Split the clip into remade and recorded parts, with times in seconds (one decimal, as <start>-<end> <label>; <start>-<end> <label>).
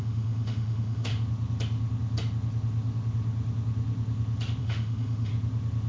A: 0.0-1.1 remade; 1.1-4.6 recorded; 4.6-5.3 remade; 5.3-5.9 recorded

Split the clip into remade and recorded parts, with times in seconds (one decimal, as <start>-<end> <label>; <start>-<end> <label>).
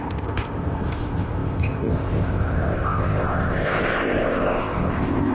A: 0.0-5.3 remade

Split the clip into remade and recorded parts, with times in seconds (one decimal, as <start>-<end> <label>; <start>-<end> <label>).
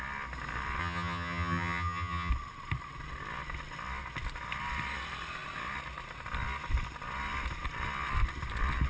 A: 0.0-0.8 recorded; 0.8-2.3 remade; 2.3-8.9 recorded